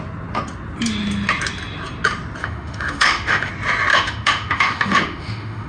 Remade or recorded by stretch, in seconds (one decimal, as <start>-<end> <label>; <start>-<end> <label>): 0.0-2.4 recorded; 2.4-3.5 remade; 3.5-3.9 recorded; 3.9-5.7 remade